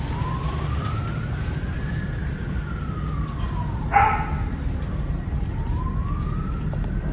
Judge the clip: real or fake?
real